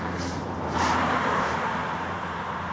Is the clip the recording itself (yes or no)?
no